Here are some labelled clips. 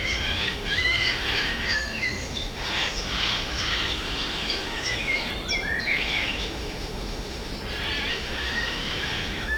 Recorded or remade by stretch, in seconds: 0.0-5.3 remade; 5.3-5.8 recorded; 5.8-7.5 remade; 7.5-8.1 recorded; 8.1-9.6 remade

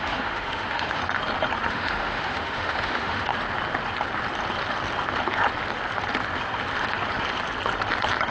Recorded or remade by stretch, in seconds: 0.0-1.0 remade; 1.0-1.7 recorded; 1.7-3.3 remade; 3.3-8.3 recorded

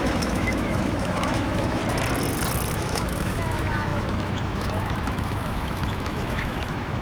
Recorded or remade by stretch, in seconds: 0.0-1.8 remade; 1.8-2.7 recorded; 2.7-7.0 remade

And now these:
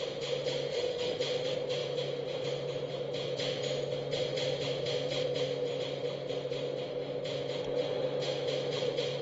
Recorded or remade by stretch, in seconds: 0.0-0.7 recorded; 0.7-1.2 remade; 1.2-9.2 recorded

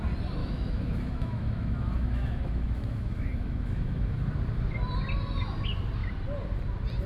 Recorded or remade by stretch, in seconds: 0.0-0.4 recorded; 0.4-4.2 remade; 4.2-7.1 recorded

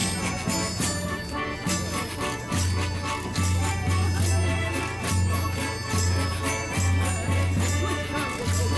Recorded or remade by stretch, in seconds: 0.0-8.8 recorded

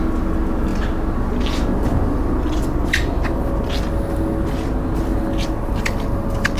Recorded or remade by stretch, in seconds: 0.0-6.6 recorded